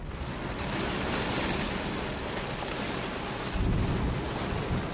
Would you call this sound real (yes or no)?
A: yes